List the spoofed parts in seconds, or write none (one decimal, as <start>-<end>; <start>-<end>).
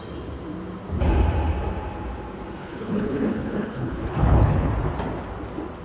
2.6-4.7